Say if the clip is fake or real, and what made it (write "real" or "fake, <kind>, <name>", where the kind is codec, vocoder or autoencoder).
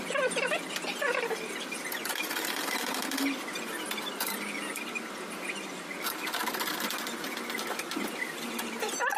fake, vocoder, BigVGAN v2